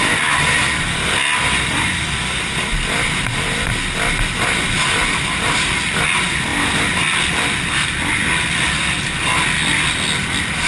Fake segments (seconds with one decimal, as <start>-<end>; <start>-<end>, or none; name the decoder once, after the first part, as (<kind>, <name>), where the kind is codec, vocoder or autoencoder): none